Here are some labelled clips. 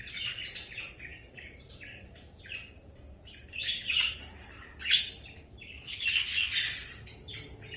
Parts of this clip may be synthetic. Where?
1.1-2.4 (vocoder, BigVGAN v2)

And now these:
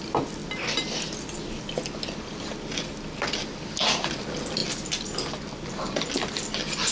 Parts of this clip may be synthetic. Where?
none

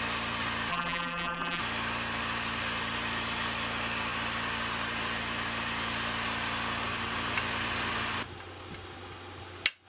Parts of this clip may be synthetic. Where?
0.7-1.6 (vocoder, BigVGAN v2)

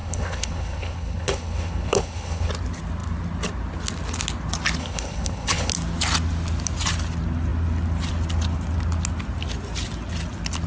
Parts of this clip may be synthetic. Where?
0.0-2.5 (codec, HILCodec); 4.8-5.7

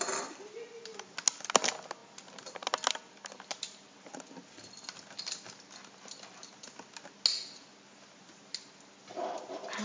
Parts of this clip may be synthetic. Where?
none

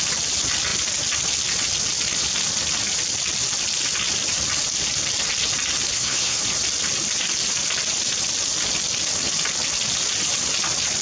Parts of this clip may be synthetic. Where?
5.9-6.4 (codec, SNAC)

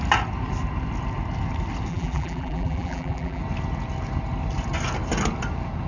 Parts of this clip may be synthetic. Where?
1.9-3.4 (vocoder, BigVGAN v2)

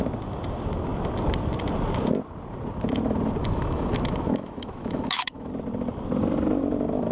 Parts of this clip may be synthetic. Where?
3.4-5.5 (autoencoder, DAC-VAE)